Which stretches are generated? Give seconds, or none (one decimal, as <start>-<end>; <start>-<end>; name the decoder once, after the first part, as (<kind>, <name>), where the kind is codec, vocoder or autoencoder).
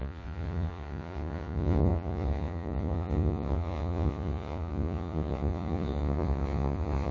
0.0-7.1 (vocoder, Vocos)